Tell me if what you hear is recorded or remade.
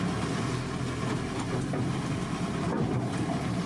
recorded